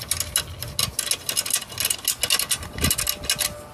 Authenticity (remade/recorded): recorded